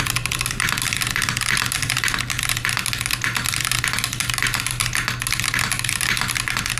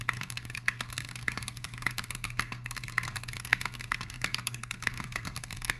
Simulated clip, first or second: second